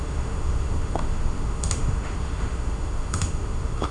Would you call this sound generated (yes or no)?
yes